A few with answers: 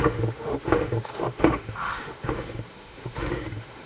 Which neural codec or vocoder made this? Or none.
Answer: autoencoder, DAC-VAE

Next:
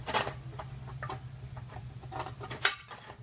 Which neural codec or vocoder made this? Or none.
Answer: none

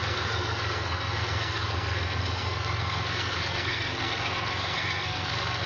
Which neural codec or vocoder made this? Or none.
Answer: codec, SNAC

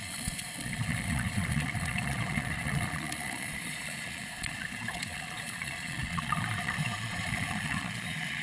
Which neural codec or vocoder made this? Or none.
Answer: vocoder, Vocos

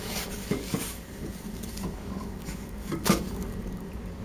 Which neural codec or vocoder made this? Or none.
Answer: codec, DAC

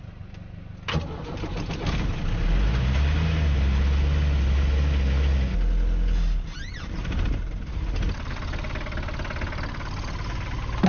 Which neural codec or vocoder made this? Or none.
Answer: none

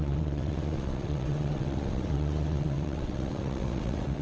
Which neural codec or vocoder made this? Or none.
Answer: vocoder, WaveNeXt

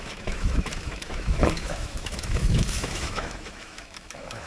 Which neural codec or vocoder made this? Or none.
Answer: autoencoder, DAC-VAE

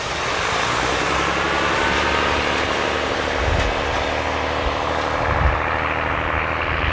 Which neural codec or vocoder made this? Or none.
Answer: none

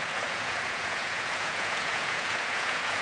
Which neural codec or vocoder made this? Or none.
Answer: vocoder, Vocos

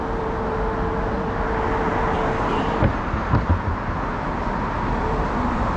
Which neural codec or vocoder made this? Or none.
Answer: none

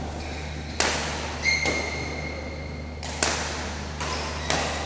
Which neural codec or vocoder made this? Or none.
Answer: none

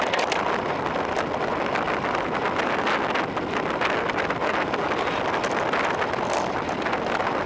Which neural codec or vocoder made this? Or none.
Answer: none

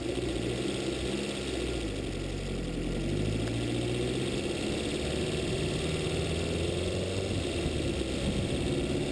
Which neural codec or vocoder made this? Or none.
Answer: none